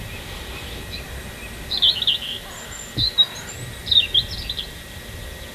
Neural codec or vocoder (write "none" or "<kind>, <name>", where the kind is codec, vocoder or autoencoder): none